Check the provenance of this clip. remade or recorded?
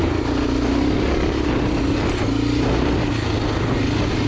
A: recorded